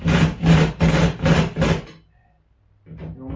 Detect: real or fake real